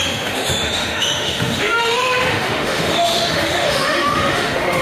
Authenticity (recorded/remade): remade